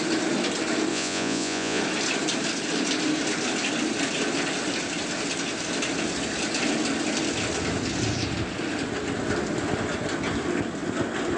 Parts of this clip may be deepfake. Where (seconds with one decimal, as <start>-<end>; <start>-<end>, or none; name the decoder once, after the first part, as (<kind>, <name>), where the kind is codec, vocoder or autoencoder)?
0.9-1.8 (vocoder, Vocos)